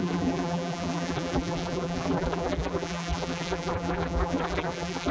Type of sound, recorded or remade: remade